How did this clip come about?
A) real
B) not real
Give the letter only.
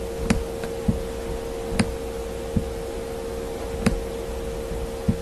A